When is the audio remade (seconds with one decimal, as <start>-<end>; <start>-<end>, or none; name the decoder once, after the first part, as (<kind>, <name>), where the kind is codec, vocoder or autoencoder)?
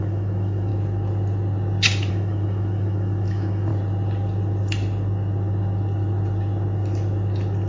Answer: 0.0-0.7 (autoencoder, DAC-VAE); 2.1-3.7